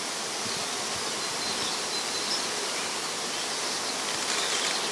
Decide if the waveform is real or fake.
real